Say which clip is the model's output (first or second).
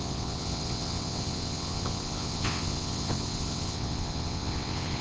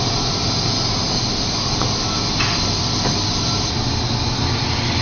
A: first